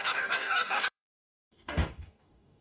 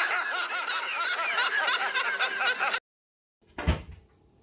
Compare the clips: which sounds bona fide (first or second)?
second